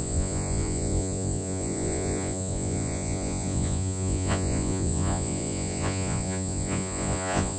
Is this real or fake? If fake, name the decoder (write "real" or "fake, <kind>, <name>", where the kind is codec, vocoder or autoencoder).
fake, vocoder, Vocos